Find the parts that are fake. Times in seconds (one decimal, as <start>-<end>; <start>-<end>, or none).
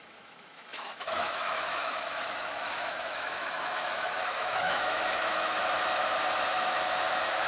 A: 0.0-7.5